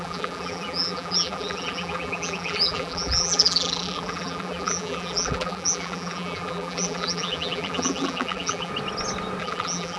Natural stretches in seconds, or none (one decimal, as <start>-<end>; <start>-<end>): 8.7-9.4